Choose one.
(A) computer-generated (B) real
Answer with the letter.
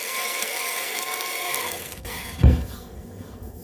A